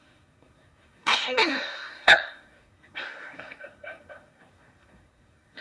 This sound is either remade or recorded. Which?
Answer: remade